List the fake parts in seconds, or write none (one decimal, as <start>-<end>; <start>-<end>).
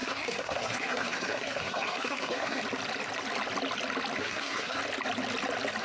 0.0-2.6; 4.2-4.8